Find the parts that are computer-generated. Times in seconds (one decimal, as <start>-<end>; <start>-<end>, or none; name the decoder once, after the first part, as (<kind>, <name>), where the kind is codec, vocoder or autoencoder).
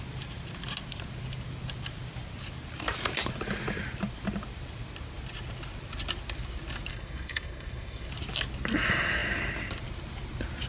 6.9-8.1 (codec, SNAC)